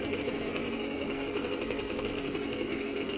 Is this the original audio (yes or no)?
no